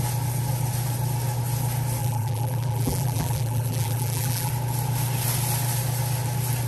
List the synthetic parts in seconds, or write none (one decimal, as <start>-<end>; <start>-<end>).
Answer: 2.0-4.5

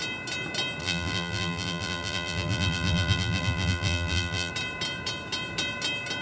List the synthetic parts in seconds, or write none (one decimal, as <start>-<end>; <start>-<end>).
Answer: 0.8-4.5

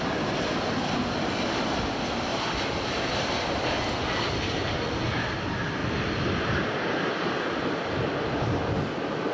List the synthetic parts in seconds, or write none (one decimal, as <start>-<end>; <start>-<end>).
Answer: 2.3-4.2

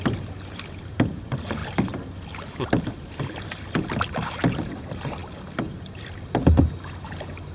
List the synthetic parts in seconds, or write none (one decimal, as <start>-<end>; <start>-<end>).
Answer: 0.0-1.6; 2.8-5.2; 6.0-7.5

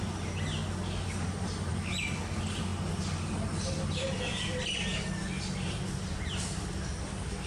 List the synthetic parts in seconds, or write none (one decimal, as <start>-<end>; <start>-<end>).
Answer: 0.0-0.6; 1.7-4.9; 6.3-7.5

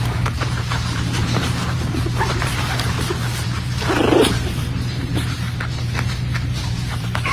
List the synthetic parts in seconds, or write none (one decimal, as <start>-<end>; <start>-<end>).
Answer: 0.0-7.3

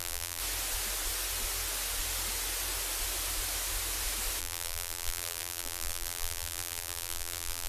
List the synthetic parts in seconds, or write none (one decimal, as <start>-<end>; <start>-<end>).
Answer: 0.0-0.4; 4.4-7.7